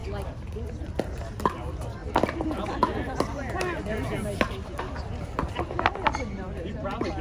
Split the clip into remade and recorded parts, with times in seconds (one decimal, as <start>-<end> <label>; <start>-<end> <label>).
0.0-0.5 recorded; 0.5-7.2 remade